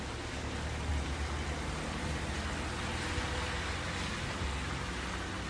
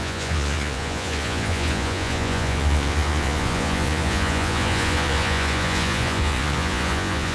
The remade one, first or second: second